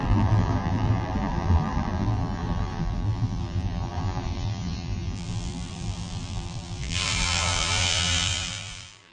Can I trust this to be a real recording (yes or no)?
no